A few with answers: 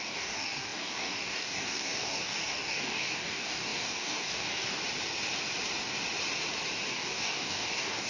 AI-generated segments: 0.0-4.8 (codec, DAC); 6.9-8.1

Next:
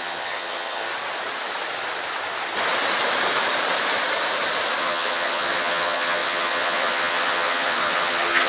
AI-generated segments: 0.0-0.9 (vocoder, HiFi-GAN); 4.8-8.5

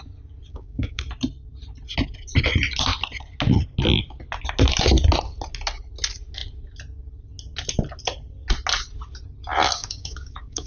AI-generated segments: 0.5-1.0 (codec, DAC); 9.8-10.7

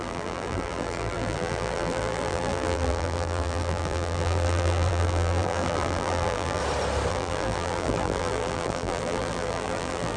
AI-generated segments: 0.0-6.6 (vocoder, BigVGAN v2); 7.1-10.2

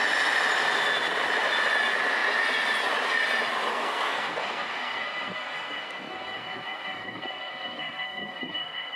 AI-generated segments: 3.7-9.0 (codec, SNAC)

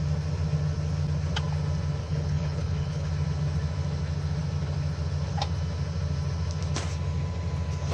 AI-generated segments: 2.0-3.1 (codec, HILCodec)

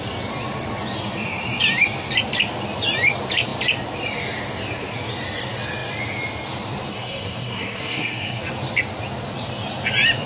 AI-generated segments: 6.9-8.4 (codec, SNAC)